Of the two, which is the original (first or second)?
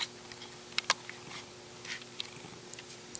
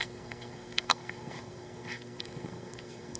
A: first